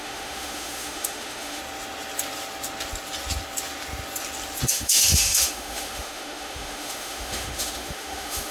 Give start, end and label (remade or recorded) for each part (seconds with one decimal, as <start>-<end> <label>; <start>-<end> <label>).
0.0-1.6 remade; 1.6-4.7 recorded; 4.7-8.5 remade